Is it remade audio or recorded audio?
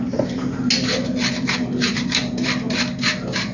recorded